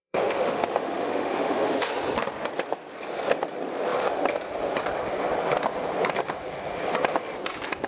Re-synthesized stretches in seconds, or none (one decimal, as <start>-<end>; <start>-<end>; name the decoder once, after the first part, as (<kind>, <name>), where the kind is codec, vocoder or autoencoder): 0.0-1.9 (autoencoder, DAC-VAE)

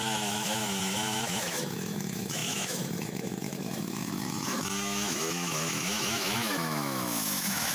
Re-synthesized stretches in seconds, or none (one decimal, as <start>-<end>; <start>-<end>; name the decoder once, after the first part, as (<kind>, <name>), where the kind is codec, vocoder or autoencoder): 0.0-7.7 (autoencoder, DAC-VAE)

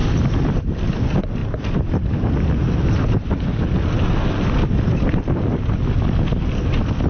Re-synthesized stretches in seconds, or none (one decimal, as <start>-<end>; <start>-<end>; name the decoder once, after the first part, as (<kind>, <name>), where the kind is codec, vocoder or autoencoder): none

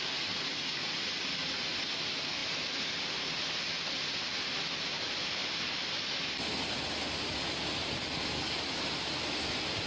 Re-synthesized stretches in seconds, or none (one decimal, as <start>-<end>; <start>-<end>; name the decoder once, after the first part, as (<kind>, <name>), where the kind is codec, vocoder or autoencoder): none

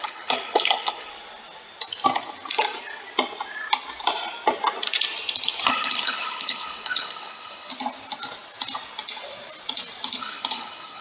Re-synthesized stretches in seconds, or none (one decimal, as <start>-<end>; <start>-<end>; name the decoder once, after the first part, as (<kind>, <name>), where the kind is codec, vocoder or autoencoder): 0.0-1.1 (codec, HILCodec); 5.7-7.7; 10.2-11.0

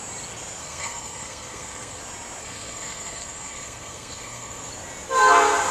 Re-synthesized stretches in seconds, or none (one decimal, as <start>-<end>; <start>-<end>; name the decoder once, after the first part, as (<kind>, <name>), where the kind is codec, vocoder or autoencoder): 0.6-2.0 (codec, SNAC); 2.4-4.7

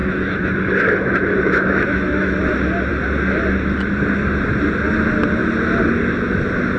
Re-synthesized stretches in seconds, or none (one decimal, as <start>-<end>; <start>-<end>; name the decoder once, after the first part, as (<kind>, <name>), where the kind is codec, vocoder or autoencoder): 0.0-2.4 (autoencoder, DAC-VAE)